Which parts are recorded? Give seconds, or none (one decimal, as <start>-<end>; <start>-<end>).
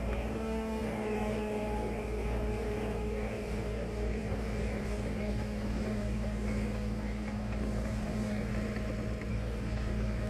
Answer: 8.5-9.3